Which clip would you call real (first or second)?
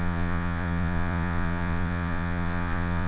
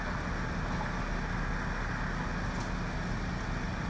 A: second